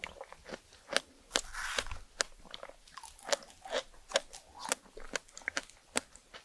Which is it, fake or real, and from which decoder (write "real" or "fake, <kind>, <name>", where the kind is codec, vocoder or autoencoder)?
real